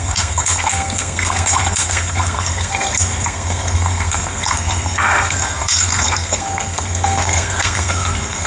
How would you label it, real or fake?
fake